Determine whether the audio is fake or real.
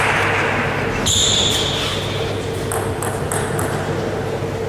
real